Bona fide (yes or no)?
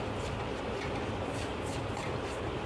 yes